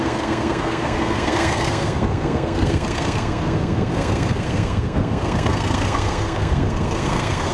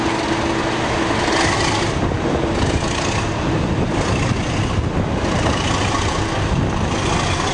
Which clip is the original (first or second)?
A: second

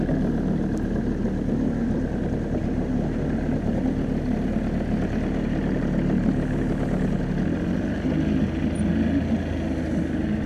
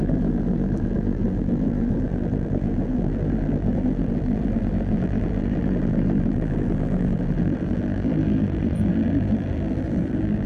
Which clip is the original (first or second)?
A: first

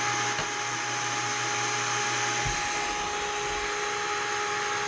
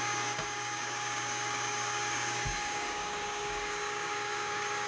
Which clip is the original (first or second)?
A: first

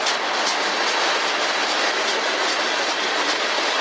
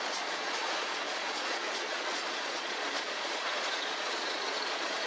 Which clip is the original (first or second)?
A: first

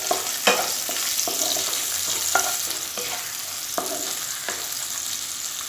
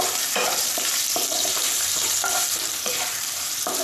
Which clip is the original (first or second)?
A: first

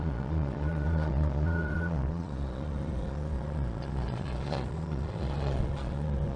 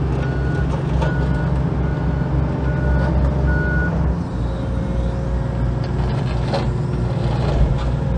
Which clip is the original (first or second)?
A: second